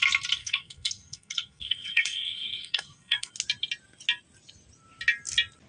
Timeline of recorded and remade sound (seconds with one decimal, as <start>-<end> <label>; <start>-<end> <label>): 0.0-0.4 recorded; 0.4-3.3 remade; 3.3-5.7 recorded